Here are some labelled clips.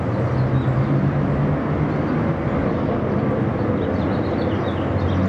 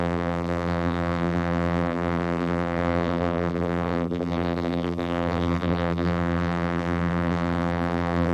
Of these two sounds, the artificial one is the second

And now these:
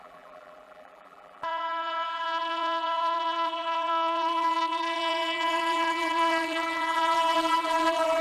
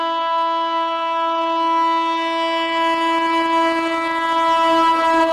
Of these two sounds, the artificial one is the first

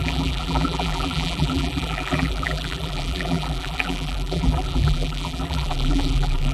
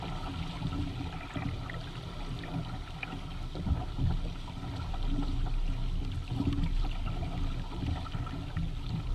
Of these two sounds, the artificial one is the first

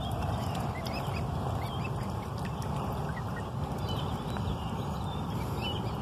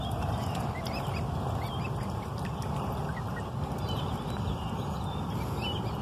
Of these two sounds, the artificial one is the first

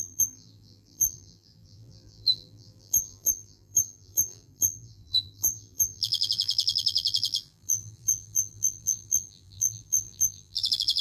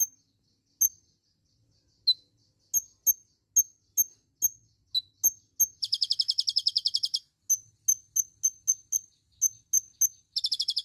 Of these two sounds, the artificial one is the first